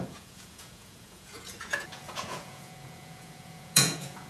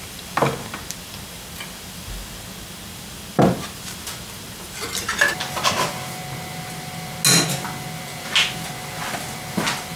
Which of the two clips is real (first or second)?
second